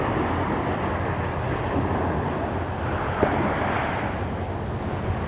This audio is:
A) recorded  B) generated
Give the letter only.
A